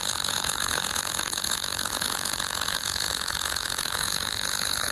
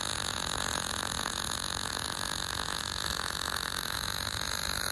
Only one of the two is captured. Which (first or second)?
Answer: second